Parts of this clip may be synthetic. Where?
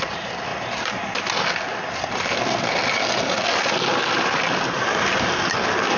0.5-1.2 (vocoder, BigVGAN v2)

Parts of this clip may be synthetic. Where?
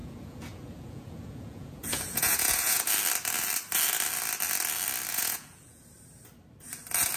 0.0-2.9 (vocoder, Vocos); 5.1-5.8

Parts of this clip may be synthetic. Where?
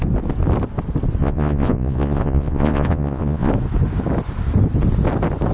1.2-3.5 (vocoder, Vocos)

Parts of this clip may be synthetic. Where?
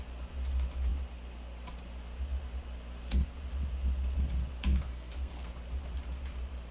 4.9-5.5 (codec, SNAC)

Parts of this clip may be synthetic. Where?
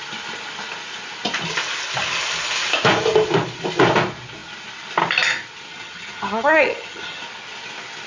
5.7-7.2 (vocoder, HiFi-GAN)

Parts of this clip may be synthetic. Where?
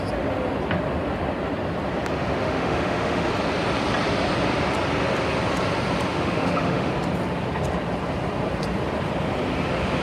2.4-3.3 (autoencoder, DAC-VAE); 6.1-6.9